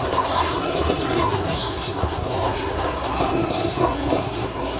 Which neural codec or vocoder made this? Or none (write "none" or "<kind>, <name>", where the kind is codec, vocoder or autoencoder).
codec, SNAC